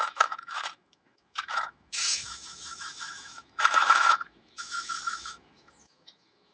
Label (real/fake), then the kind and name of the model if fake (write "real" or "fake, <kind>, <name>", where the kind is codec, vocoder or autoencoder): fake, autoencoder, DAC-VAE